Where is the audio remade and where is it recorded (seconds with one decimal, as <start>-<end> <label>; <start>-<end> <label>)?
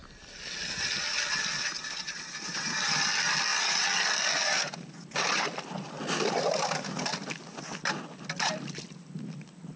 0.0-9.8 recorded